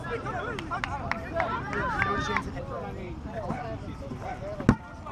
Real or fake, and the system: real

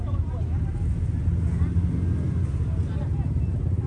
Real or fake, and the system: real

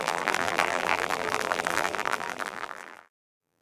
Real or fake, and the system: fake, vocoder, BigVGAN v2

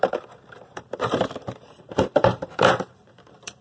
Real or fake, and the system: fake, vocoder, BigVGAN v2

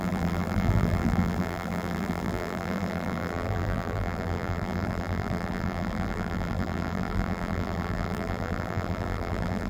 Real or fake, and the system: fake, vocoder, BigVGAN v2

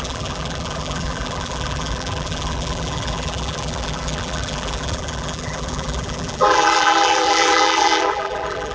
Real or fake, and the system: fake, vocoder, BigVGAN v2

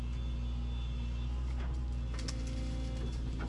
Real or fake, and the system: real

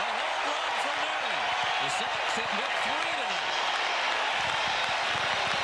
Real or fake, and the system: real